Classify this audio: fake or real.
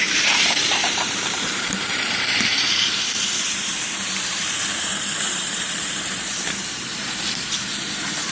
fake